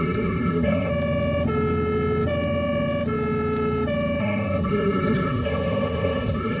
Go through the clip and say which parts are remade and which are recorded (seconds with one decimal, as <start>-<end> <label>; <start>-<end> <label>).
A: 0.0-0.9 remade; 0.9-4.2 recorded; 4.2-6.6 remade